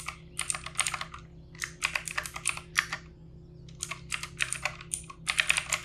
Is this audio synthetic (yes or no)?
no